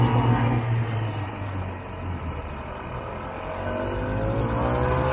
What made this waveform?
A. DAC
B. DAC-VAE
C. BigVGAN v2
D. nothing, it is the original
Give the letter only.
D